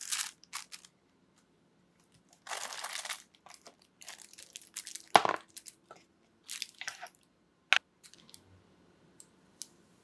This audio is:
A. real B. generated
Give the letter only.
A